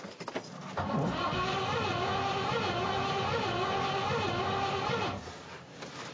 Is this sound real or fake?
real